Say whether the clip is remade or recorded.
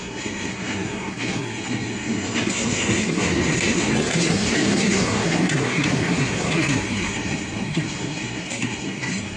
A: remade